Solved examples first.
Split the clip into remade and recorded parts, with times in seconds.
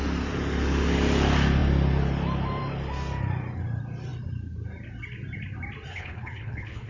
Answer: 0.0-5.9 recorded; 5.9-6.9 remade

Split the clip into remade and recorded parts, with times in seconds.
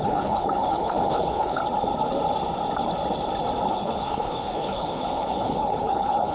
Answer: 0.0-1.6 remade; 1.6-3.7 recorded; 3.7-6.3 remade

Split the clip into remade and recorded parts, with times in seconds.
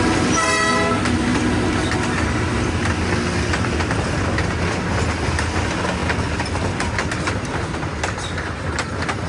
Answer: 0.0-9.3 recorded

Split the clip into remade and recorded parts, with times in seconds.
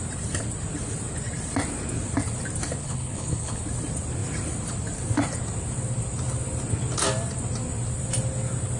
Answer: 0.0-2.8 recorded; 2.8-3.6 remade; 3.6-8.8 recorded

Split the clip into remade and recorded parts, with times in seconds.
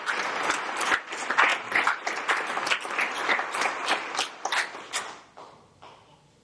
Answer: 0.0-6.4 recorded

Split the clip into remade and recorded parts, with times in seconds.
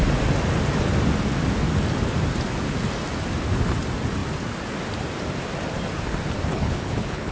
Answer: 0.0-6.5 recorded; 6.5-7.3 remade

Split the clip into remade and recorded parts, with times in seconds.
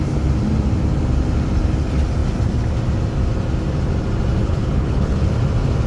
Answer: 0.0-4.4 recorded; 4.4-5.3 remade; 5.3-5.9 recorded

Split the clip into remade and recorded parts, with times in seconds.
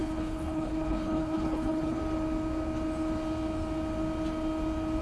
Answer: 0.0-2.0 remade; 2.0-5.0 recorded